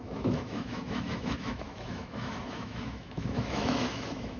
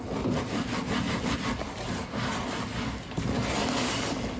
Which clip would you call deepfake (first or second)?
first